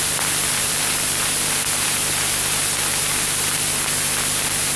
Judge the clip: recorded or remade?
remade